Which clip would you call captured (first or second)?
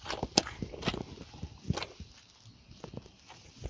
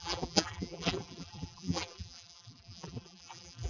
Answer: first